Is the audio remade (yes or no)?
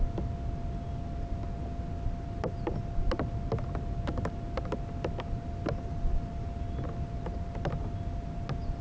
no